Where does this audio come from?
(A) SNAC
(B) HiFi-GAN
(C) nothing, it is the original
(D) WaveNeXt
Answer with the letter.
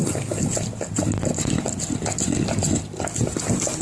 C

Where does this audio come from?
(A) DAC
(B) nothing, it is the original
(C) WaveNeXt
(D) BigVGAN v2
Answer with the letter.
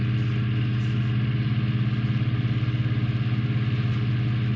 B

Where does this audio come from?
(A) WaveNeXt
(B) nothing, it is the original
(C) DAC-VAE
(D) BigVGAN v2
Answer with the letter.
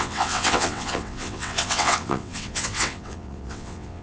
A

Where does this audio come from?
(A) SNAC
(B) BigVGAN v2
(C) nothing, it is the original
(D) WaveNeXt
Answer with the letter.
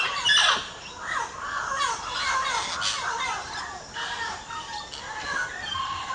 C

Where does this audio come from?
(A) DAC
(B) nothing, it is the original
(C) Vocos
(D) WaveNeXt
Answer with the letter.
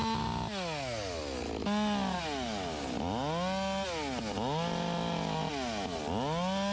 B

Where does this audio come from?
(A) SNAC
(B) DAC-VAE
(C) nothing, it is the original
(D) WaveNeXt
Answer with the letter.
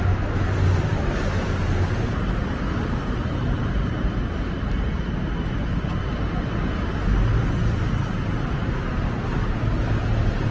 C